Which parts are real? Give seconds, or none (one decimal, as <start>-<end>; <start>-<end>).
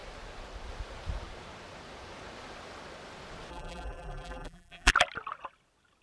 0.0-3.5; 4.9-6.0